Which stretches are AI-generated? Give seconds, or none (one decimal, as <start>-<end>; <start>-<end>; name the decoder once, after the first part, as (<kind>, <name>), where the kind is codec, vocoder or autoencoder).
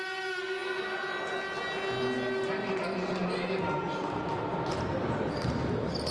none